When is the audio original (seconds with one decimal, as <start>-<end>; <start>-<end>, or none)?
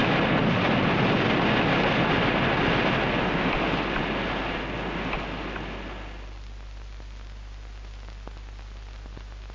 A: 0.0-9.5